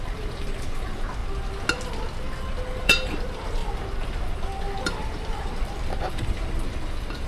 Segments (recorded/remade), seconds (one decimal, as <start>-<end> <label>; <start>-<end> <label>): 0.0-1.2 remade; 1.2-2.6 recorded; 2.6-3.6 remade; 3.6-4.8 recorded; 4.8-7.3 remade